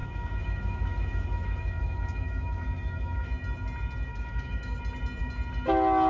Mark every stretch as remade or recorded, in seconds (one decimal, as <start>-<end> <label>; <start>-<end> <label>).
0.0-3.3 remade; 3.3-4.1 recorded; 4.1-4.8 remade; 4.8-6.1 recorded